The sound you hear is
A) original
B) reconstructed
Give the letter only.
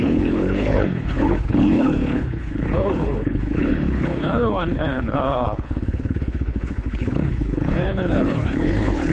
B